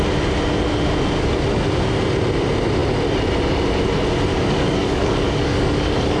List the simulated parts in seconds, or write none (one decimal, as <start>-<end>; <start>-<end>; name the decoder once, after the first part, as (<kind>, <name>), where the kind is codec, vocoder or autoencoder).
4.3-6.2 (codec, DAC)